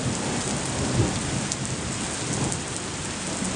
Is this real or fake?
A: real